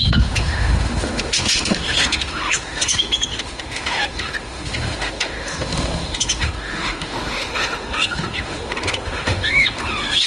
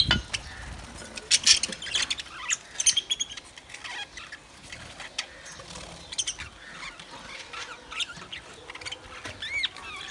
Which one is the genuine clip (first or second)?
second